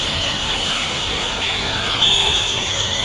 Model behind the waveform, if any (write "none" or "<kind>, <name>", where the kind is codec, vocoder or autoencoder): codec, SNAC